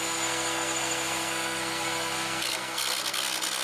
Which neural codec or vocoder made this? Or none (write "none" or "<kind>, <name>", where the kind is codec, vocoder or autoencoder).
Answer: codec, SNAC